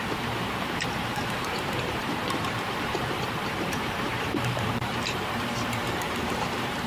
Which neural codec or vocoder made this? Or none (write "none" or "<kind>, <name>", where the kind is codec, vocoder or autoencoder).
vocoder, BigVGAN v2